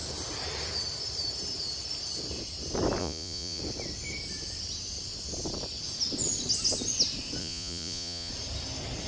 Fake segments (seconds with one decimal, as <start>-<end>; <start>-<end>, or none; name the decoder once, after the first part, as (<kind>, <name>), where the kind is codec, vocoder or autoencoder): 3.0-3.6 (vocoder, Vocos); 7.4-8.3

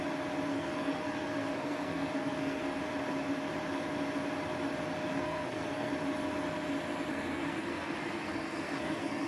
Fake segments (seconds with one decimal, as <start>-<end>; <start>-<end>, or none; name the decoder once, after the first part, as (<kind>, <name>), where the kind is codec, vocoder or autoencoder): 0.5-2.8 (codec, SNAC); 5.1-5.9; 7.1-9.3

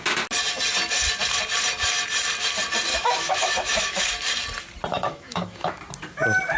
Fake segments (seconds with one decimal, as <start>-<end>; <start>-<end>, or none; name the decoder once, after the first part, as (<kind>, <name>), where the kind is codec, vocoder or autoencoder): 2.9-4.1 (autoencoder, DAC-VAE); 4.9-5.8